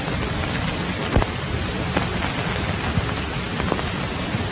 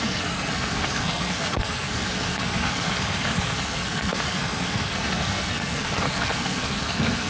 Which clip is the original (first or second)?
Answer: first